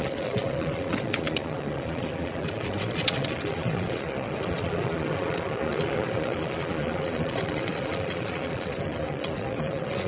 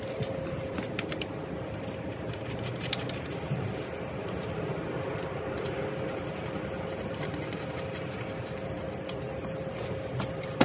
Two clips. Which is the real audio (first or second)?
second